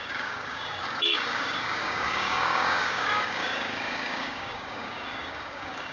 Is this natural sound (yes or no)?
no